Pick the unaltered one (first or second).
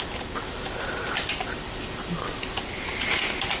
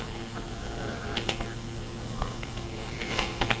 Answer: first